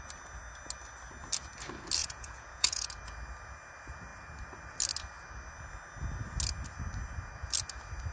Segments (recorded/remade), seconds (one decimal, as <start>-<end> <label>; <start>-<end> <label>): 0.0-2.0 recorded; 2.0-2.9 remade; 2.9-8.1 recorded